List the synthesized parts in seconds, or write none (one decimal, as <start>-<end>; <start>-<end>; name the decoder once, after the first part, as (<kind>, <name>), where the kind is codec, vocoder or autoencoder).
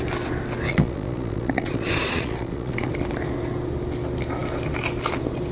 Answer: 0.7-2.9 (vocoder, Vocos)